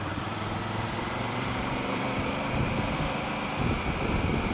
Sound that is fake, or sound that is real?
fake